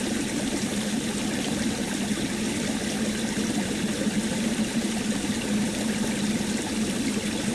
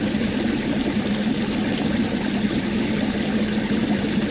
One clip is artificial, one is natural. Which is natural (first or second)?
second